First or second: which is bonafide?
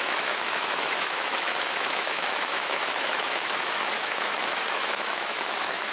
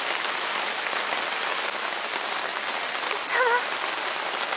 second